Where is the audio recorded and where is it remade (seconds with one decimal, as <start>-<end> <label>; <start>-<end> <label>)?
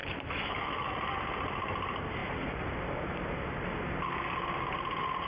0.0-0.9 remade; 0.9-5.3 recorded